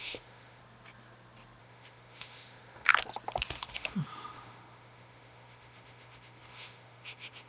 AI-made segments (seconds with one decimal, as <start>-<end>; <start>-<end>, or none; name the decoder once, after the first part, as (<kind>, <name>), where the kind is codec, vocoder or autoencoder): 0.0-0.6 (autoencoder, DAC-VAE); 1.6-2.9; 3.6-7.5